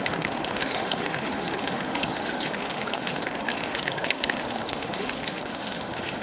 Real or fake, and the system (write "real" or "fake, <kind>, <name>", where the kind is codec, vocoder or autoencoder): fake, autoencoder, DAC-VAE